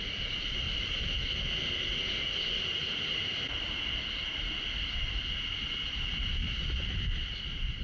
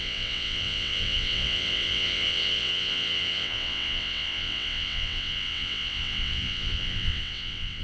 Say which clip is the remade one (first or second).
second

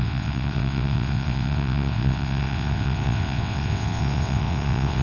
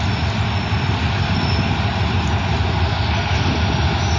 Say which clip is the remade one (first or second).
first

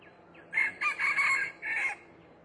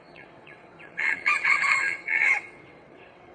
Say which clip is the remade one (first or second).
second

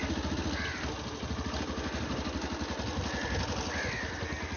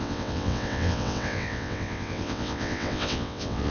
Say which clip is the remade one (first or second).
second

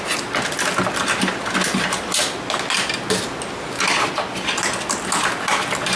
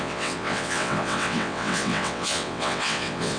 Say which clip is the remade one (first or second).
second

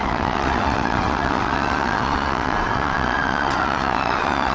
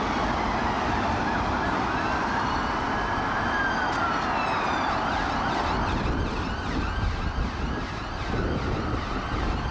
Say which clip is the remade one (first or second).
first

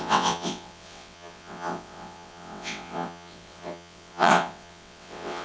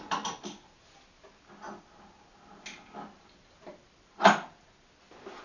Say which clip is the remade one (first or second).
first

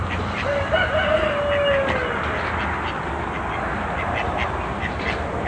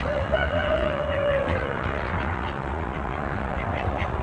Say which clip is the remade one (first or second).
second